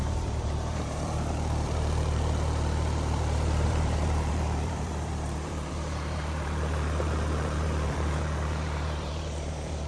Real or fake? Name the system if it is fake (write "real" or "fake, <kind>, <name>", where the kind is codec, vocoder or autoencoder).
fake, vocoder, BigVGAN v2